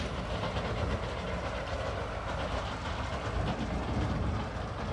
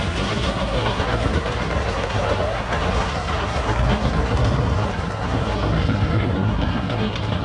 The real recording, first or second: first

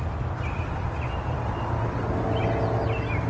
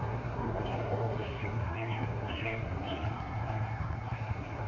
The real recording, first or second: first